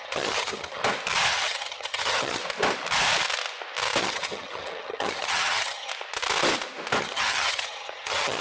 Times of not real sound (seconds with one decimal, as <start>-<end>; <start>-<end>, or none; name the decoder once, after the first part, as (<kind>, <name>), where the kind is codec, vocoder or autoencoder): 0.0-0.8 (vocoder, HiFi-GAN); 1.3-2.4; 4.0-5.9; 7.0-8.4